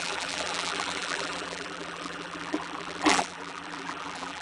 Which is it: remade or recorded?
remade